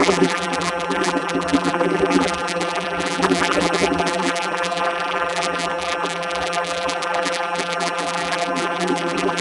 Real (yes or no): no